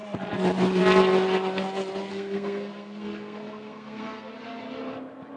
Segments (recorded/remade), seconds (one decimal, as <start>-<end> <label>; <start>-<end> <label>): 0.0-2.1 recorded; 2.1-4.3 remade; 4.3-5.4 recorded